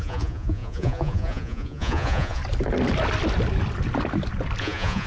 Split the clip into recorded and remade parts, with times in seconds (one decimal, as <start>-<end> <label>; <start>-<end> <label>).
0.0-2.4 remade; 2.4-4.6 recorded; 4.6-5.1 remade